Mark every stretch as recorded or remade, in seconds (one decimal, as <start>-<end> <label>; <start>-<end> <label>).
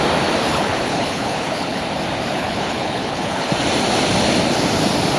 0.0-0.5 recorded; 0.5-1.8 remade; 1.8-2.3 recorded; 2.3-3.5 remade; 3.5-5.2 recorded